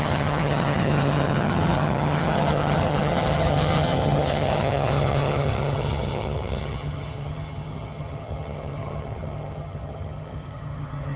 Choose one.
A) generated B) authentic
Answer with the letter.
A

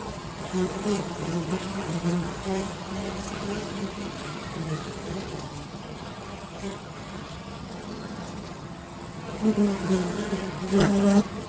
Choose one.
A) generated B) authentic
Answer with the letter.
A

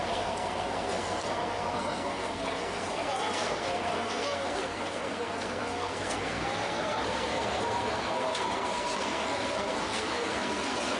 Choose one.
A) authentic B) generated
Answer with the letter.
B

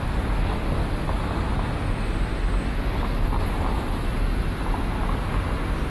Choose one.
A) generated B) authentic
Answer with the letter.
B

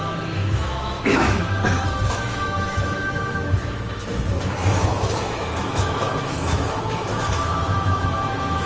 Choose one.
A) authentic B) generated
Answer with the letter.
B